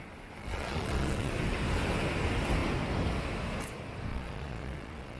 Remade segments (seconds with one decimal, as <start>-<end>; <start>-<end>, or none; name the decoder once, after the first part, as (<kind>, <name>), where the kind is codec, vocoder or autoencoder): 0.4-1.3 (vocoder, Vocos); 4.1-5.2